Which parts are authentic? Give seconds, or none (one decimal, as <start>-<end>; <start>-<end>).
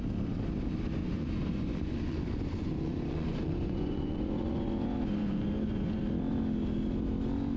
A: 0.0-1.0; 2.2-2.6; 6.0-7.6